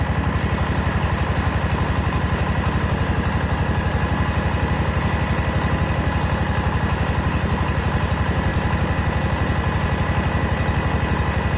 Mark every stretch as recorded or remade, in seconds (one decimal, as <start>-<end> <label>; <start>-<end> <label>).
0.0-11.6 recorded